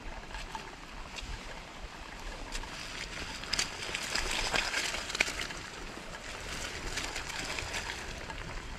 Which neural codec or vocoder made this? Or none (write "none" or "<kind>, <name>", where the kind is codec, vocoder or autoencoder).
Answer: none